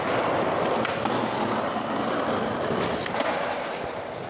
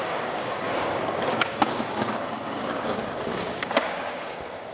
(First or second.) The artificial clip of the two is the second